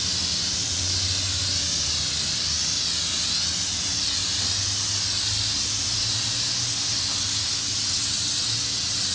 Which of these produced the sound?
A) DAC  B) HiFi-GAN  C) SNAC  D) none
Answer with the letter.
D